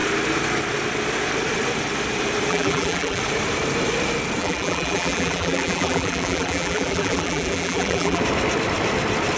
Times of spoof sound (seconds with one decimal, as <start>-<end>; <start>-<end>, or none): 2.5-3.2; 4.4-8.2